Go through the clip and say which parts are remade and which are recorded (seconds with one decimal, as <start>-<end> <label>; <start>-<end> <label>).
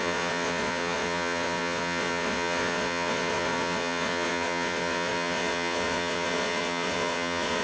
0.0-7.6 remade